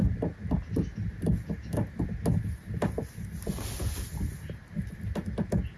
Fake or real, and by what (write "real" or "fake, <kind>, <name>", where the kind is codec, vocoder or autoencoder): real